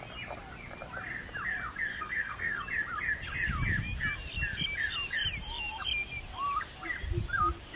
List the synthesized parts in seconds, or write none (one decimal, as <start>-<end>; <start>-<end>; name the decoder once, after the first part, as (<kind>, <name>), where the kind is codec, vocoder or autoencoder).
1.9-2.6 (codec, SNAC)